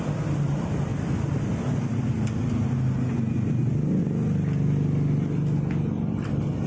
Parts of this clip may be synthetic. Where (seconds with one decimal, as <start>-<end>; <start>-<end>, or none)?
none